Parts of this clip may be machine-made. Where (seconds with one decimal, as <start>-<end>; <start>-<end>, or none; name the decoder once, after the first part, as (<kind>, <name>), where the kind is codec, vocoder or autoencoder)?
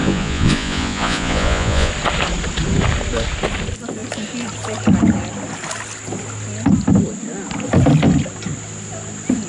0.0-1.9 (vocoder, Vocos)